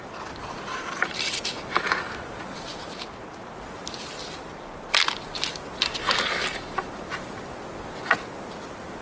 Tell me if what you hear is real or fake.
real